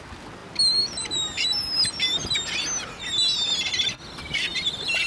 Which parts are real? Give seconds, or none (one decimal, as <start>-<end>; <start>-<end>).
0.0-5.1